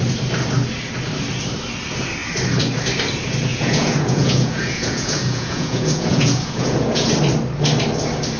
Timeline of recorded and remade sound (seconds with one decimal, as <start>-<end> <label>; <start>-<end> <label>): 0.0-3.5 recorded; 3.5-7.1 remade; 7.1-8.4 recorded